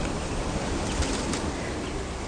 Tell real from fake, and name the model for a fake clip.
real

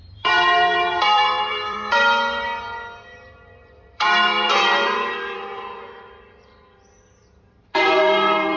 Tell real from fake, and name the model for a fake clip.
fake, vocoder, BigVGAN v2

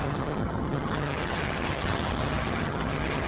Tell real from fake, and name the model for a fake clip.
fake, vocoder, HiFi-GAN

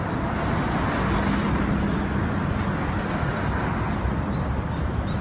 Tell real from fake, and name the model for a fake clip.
real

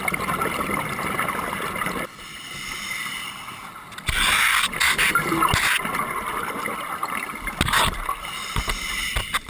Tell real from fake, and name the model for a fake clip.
real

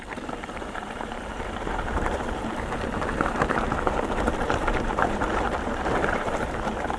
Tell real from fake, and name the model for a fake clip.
fake, vocoder, BigVGAN v2